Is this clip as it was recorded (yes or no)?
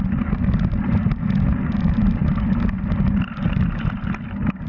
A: yes